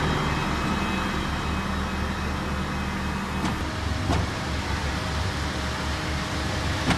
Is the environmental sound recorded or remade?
recorded